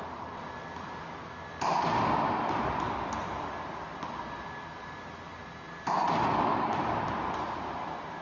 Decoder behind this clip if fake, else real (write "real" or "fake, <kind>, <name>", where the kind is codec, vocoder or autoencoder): real